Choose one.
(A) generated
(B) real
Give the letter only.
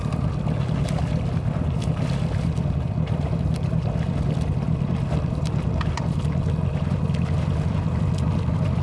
B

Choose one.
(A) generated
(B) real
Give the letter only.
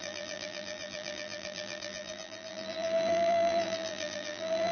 A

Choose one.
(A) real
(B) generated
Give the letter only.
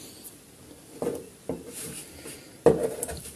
A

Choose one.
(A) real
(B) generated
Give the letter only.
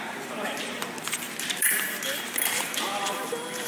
B